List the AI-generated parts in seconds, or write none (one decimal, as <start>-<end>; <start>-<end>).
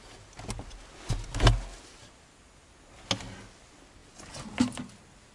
none